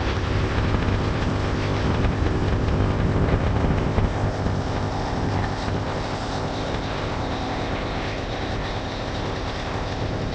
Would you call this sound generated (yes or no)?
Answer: yes